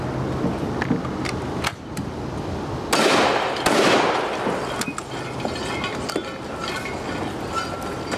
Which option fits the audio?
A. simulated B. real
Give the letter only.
B